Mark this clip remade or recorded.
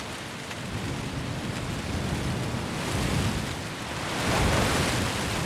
recorded